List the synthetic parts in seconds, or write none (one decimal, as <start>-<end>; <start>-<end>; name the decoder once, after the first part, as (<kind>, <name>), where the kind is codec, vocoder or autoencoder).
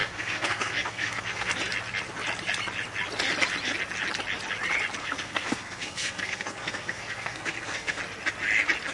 0.0-1.5 (codec, SNAC); 5.0-8.0